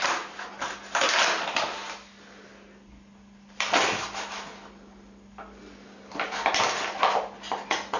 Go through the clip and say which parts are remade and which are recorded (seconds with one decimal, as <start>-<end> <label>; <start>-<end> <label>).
0.0-8.0 recorded